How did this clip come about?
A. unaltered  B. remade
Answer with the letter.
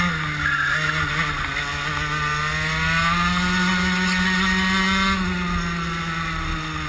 A